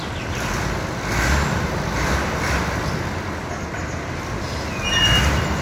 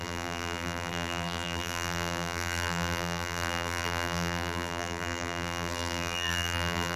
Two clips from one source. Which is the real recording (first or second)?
first